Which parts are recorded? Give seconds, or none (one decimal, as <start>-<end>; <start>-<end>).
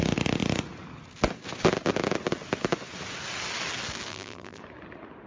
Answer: 0.0-4.1; 4.6-5.3